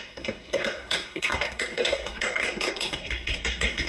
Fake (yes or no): yes